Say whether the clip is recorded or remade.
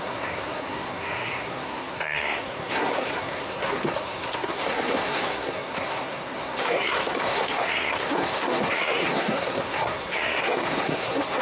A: remade